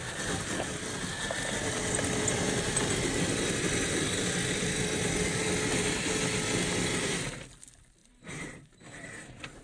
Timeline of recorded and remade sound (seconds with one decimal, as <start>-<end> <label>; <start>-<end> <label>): 0.0-8.0 recorded; 8.0-9.6 remade